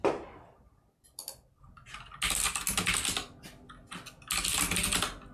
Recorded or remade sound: recorded